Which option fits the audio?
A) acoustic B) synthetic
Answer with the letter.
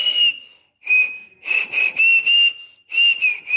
A